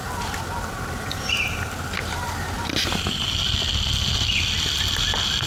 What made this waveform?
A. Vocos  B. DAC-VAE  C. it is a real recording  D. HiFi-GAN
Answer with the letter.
C